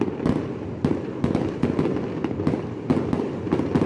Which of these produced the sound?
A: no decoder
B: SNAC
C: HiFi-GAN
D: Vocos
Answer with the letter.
A